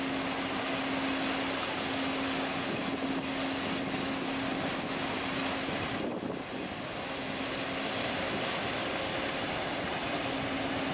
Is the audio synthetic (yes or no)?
no